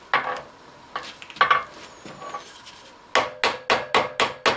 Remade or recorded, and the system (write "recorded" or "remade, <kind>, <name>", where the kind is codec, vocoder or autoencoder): recorded